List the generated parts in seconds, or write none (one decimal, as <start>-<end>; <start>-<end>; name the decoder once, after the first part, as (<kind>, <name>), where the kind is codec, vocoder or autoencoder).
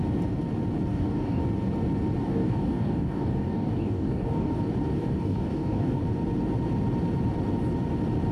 0.9-1.4 (codec, DAC); 2.2-4.6; 5.0-6.0